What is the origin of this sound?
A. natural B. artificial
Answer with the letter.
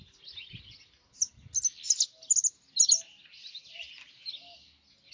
A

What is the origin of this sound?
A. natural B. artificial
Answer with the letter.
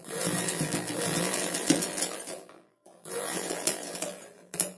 B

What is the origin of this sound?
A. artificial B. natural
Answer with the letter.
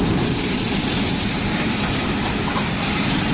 A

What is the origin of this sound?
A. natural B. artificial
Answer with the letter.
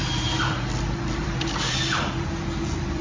B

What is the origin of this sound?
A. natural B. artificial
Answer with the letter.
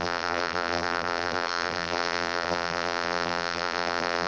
B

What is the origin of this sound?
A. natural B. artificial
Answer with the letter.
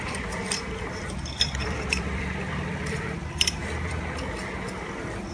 B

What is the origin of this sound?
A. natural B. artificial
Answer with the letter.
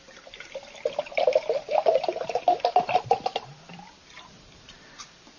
B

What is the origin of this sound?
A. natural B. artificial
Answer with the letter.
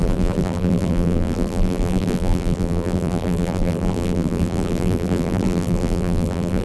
B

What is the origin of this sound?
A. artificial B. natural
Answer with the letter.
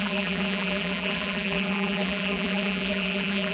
A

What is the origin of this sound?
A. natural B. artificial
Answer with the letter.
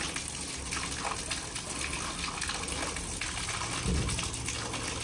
A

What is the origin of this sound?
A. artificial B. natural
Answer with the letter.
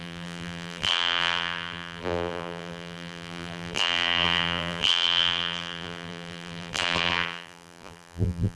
A